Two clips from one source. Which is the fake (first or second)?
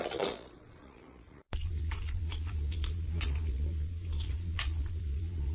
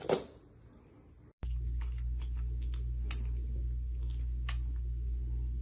first